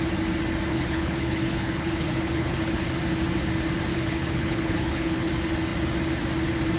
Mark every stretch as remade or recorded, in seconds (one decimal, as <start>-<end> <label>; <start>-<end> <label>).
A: 0.0-0.7 recorded; 0.7-2.9 remade; 2.9-3.9 recorded; 3.9-5.3 remade; 5.3-6.8 recorded